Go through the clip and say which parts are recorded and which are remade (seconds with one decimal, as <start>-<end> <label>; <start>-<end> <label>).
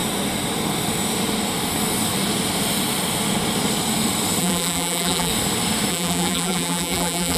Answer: 0.0-4.4 recorded; 4.4-5.3 remade; 5.3-5.9 recorded; 5.9-7.4 remade